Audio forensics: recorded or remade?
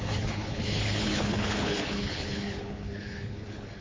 remade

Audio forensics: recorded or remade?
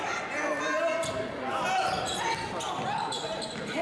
recorded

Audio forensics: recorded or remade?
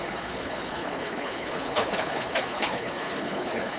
remade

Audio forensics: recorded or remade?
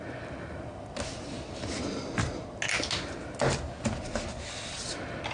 recorded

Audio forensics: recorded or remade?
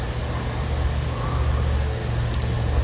recorded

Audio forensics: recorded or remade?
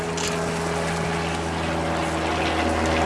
recorded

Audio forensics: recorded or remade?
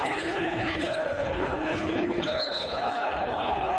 remade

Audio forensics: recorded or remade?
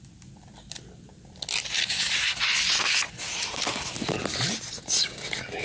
recorded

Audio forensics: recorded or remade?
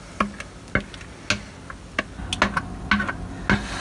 recorded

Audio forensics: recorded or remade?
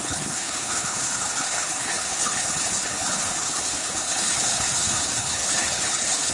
remade